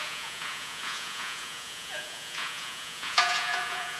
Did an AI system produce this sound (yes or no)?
yes